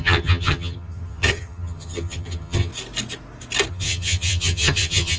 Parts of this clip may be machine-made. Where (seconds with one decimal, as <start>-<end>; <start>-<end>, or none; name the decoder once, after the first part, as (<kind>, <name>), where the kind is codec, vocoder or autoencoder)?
0.0-2.7 (vocoder, HiFi-GAN); 3.7-5.2